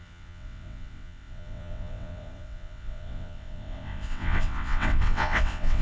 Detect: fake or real fake